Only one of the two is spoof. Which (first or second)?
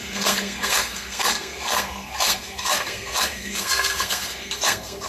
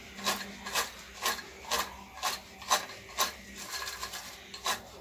first